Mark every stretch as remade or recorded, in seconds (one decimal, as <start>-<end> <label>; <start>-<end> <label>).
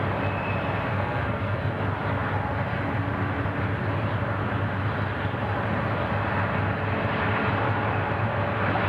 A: 0.0-0.9 recorded; 0.9-1.6 remade; 1.6-8.9 recorded